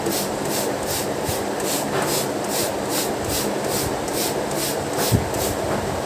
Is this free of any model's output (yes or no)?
yes